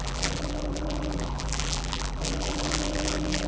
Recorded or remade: remade